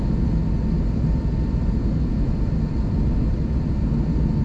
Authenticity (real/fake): real